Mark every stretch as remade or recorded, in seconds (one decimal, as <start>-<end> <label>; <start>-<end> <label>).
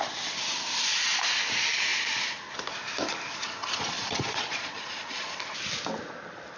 0.0-3.6 recorded; 3.6-5.4 remade; 5.4-6.6 recorded